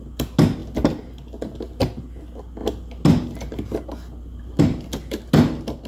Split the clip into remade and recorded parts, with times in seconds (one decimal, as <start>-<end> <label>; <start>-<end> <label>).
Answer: 0.0-5.9 recorded